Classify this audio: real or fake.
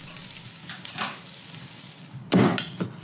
real